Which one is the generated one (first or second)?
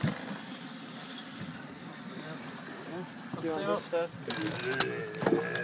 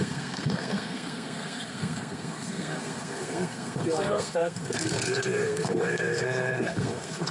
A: second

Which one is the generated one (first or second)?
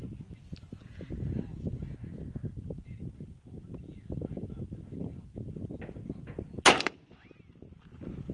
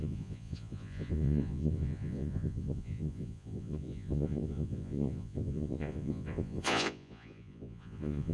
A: second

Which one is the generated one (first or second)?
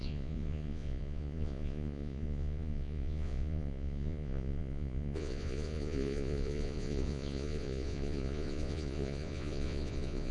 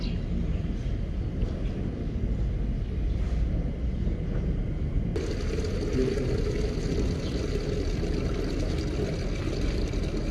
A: first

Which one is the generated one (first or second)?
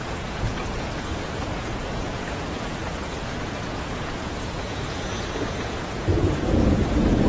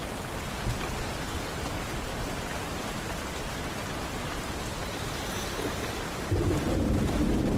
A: first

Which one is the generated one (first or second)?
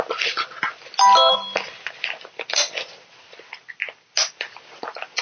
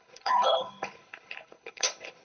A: second